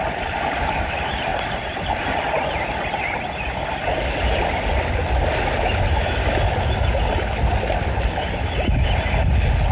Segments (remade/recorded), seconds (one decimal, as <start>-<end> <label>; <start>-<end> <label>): 0.0-9.7 recorded